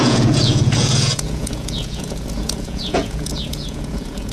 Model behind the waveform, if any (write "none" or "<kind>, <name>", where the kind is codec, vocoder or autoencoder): vocoder, Vocos